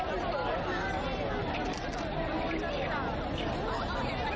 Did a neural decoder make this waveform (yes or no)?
no